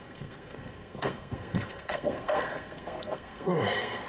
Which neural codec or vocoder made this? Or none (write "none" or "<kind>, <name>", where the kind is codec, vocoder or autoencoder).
codec, SNAC